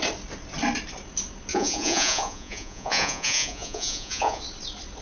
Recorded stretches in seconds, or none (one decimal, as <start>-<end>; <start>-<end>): 0.0-1.5; 4.4-5.0